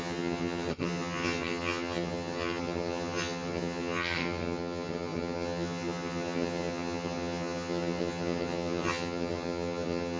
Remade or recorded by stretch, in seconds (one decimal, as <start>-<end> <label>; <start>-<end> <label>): 0.0-10.2 remade